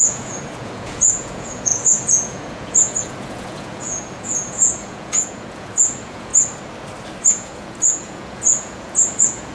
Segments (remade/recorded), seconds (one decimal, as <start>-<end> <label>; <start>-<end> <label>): 0.0-6.3 remade; 6.3-7.3 recorded; 7.3-9.5 remade